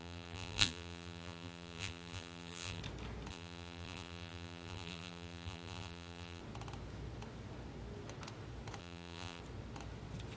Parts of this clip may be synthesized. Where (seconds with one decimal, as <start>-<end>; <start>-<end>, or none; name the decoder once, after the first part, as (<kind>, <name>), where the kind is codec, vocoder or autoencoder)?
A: 0.0-2.8 (vocoder, BigVGAN v2); 3.3-6.4; 8.8-9.4